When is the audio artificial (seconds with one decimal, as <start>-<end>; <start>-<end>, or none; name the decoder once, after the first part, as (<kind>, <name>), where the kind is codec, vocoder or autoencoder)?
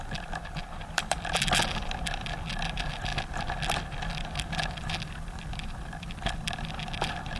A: 0.0-3.1 (vocoder, BigVGAN v2); 5.5-7.4